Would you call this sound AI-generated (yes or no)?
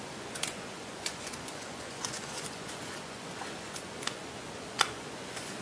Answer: yes